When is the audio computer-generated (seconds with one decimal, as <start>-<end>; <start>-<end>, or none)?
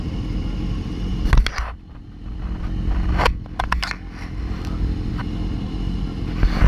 none